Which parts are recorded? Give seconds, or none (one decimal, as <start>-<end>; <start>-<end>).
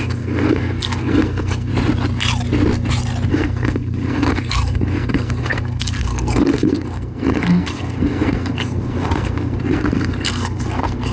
1.7-3.3